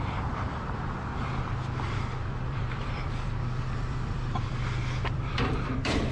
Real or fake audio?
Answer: fake